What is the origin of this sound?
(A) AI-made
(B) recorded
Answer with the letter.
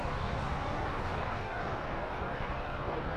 A